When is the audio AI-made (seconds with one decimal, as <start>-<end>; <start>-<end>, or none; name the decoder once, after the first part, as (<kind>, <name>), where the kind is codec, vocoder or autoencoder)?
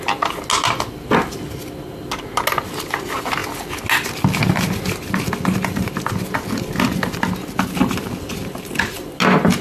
none